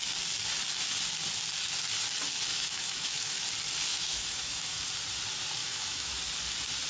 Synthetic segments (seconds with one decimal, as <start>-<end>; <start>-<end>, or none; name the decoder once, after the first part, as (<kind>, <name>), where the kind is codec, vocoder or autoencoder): 2.5-3.4 (autoencoder, DAC-VAE); 3.9-4.9; 5.6-6.2